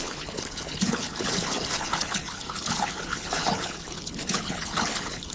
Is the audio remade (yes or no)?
yes